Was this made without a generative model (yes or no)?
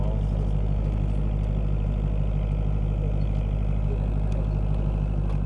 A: yes